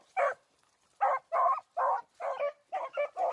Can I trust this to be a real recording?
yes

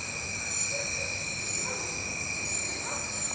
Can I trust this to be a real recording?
yes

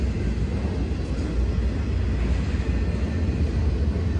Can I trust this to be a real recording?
yes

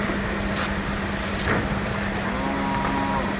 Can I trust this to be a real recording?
yes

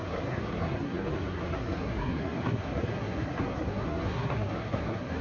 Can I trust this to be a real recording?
no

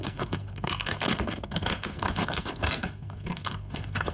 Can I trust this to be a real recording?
no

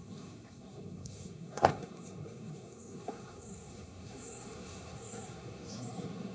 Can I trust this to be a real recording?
no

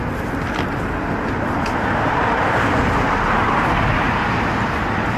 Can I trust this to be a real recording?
yes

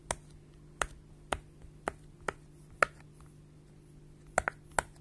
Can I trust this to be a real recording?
yes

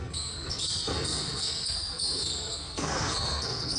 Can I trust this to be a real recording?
no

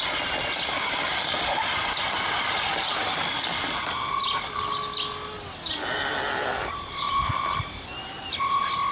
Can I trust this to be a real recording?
yes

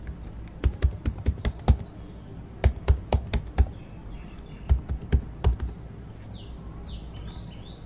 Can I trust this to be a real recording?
yes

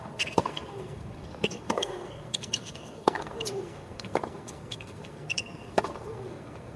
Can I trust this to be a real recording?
no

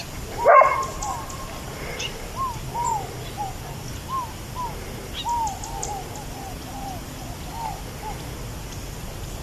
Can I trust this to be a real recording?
yes